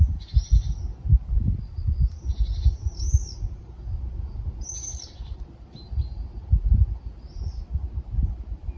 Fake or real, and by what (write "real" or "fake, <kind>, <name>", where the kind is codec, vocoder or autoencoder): real